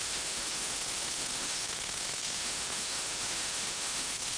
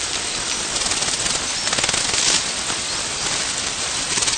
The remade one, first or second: first